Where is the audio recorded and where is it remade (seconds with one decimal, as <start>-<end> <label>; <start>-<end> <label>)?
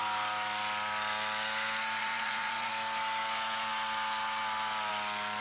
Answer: 0.0-2.0 recorded; 2.0-2.7 remade; 2.7-5.4 recorded